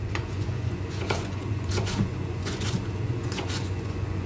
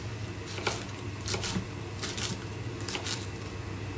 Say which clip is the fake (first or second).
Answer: first